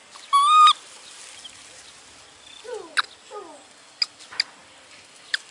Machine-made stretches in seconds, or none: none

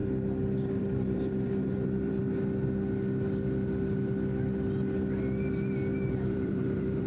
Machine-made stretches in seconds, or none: 0.8-2.2; 6.1-7.1